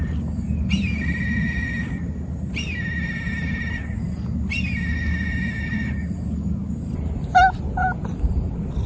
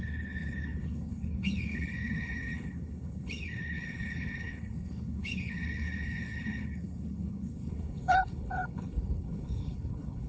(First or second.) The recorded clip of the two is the first